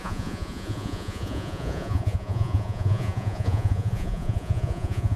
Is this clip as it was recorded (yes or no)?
no